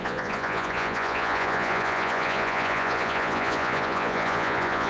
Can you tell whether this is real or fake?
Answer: fake